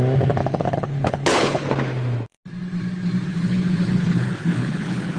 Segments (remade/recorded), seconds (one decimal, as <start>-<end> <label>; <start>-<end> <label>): 0.0-0.4 recorded; 0.4-1.7 remade; 1.7-3.3 recorded; 3.3-5.2 remade